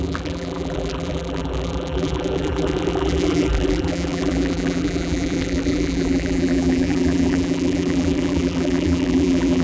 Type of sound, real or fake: fake